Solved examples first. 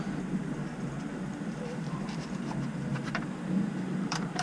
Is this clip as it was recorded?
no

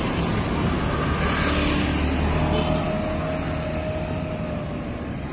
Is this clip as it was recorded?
yes